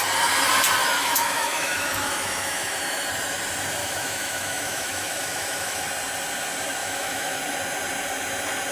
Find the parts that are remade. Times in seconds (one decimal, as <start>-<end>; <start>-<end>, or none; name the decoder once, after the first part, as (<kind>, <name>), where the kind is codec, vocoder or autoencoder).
0.8-3.0 (autoencoder, DAC-VAE); 3.8-5.8; 6.8-7.4